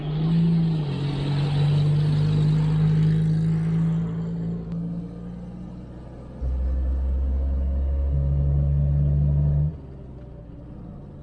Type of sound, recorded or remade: recorded